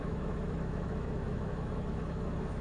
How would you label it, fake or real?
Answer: fake